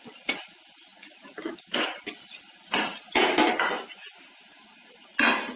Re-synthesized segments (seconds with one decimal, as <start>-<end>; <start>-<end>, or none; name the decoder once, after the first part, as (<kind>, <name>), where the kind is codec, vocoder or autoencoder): none